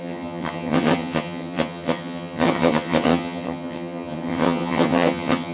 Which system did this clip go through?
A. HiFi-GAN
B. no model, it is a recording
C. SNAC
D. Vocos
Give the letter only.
A